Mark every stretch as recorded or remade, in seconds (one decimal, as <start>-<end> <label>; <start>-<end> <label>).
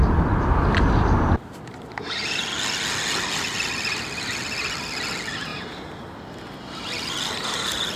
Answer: 0.0-8.0 recorded